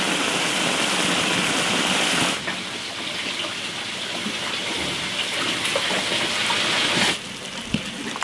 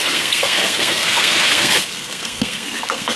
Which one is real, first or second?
first